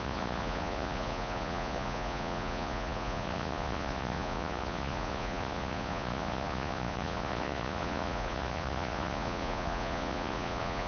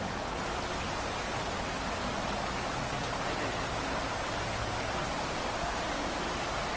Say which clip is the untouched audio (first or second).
second